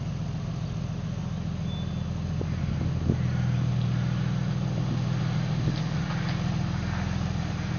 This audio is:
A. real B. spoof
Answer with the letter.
A